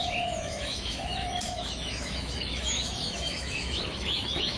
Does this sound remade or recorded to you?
remade